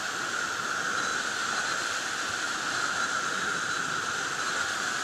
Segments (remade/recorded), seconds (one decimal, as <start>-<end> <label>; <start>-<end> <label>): 0.0-5.0 recorded